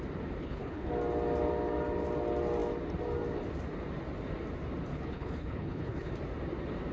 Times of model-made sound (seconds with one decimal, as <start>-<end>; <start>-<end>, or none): 0.4-0.9; 4.9-6.1